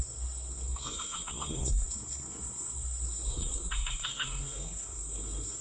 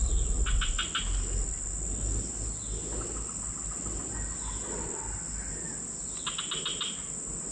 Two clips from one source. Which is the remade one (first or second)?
first